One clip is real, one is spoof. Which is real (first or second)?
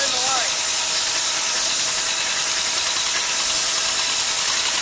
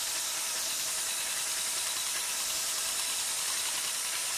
first